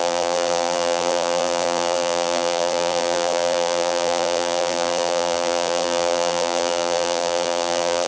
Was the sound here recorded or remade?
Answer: remade